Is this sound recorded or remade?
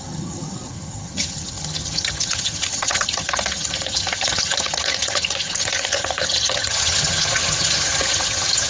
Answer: remade